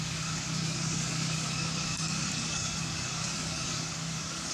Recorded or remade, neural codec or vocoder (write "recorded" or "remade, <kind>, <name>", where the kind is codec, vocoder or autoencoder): remade, codec, DAC